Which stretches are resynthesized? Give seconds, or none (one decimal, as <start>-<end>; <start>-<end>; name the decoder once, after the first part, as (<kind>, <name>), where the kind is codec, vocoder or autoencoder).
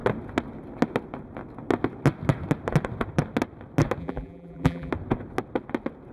4.0-4.9 (vocoder, BigVGAN v2)